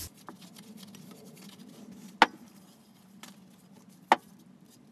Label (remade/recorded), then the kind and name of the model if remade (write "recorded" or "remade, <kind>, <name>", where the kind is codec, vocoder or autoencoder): recorded